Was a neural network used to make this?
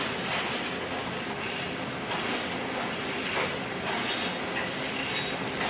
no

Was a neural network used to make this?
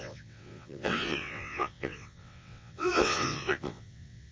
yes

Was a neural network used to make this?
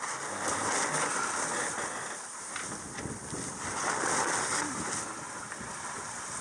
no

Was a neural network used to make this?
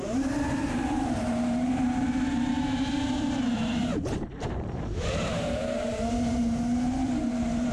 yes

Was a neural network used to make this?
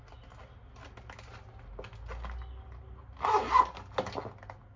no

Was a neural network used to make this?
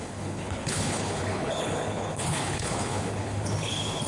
yes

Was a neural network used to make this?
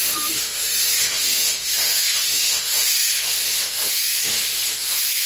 yes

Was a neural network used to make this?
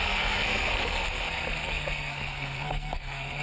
yes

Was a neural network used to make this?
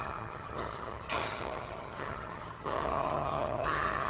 yes